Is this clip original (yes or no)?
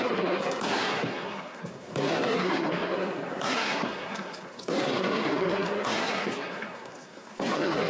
no